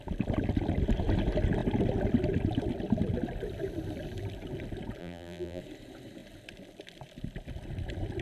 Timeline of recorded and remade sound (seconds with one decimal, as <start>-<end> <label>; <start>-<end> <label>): 0.0-5.0 recorded; 5.0-5.6 remade; 5.6-8.2 recorded